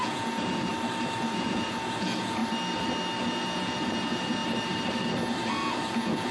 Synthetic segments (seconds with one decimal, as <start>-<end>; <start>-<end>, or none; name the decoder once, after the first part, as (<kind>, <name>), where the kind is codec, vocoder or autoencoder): 0.0-0.7 (vocoder, Vocos); 1.3-2.4; 3.2-4.4; 5.4-6.3